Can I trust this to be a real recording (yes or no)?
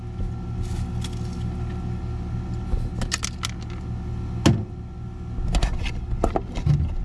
yes